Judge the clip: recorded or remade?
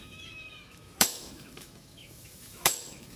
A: remade